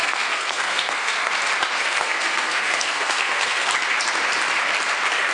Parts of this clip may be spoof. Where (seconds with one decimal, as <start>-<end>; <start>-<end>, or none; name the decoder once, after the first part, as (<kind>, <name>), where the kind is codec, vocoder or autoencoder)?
0.0-1.3 (codec, SNAC); 1.8-3.7

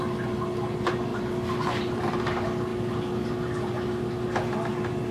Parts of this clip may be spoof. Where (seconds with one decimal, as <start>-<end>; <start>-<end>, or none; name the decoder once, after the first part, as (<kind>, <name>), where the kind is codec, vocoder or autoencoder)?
none